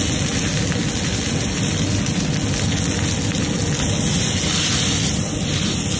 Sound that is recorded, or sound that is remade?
recorded